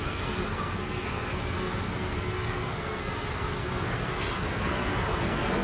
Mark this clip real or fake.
fake